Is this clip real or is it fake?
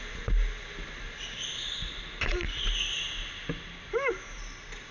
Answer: real